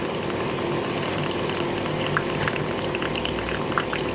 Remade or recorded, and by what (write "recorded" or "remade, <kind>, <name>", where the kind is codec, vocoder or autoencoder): recorded